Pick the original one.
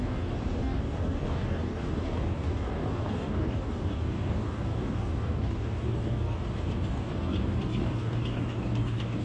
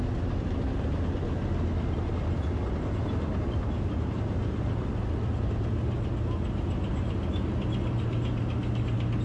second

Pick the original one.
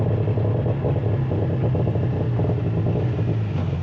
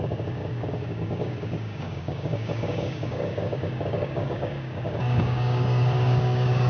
first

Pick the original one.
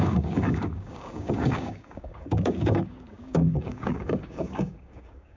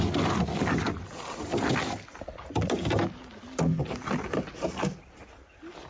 second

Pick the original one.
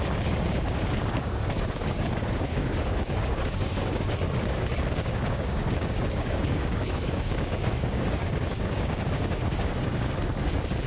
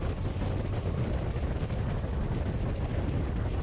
second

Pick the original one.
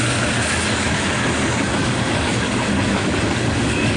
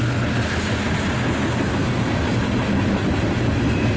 second